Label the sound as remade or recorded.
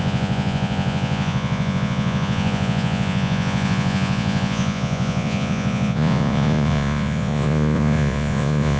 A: remade